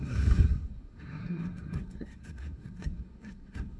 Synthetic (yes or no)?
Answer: yes